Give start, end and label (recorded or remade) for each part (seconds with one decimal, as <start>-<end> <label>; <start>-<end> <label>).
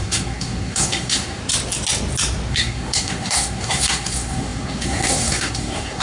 0.0-1.4 remade; 1.4-2.5 recorded; 2.5-6.0 remade